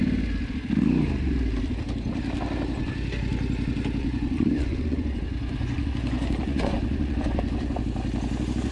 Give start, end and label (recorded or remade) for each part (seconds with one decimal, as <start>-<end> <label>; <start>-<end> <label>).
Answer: 0.0-4.0 recorded; 4.0-7.8 remade; 7.8-8.7 recorded